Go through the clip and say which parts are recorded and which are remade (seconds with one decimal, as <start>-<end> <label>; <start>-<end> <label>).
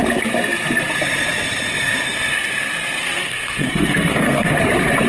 0.0-3.0 recorded; 3.0-4.5 remade; 4.5-5.1 recorded